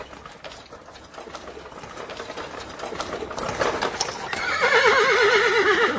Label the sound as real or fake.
real